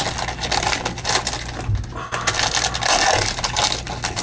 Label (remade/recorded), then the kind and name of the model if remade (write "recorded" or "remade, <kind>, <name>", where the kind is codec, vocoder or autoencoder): recorded